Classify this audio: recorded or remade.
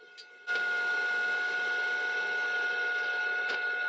recorded